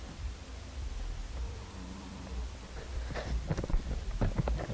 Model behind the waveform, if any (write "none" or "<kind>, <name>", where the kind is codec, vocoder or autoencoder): vocoder, BigVGAN v2